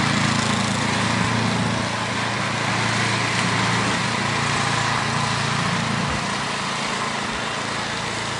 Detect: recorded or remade recorded